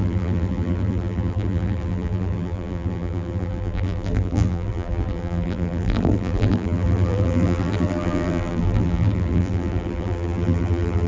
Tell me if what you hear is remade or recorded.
remade